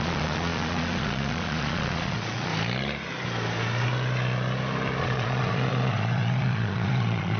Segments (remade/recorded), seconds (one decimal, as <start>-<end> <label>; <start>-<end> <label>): 0.0-2.5 remade; 2.5-5.0 recorded; 5.0-7.4 remade